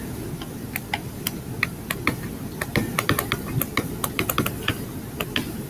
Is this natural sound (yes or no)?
no